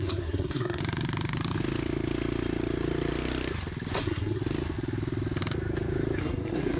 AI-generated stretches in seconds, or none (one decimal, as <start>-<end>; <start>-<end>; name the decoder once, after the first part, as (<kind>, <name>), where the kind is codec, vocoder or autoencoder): 0.0-0.8 (codec, SNAC); 4.0-4.4; 6.2-6.8